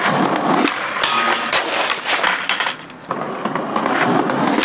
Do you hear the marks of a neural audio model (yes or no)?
no